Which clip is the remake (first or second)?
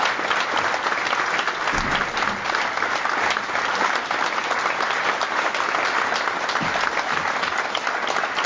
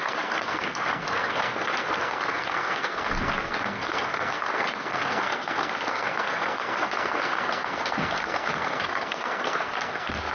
second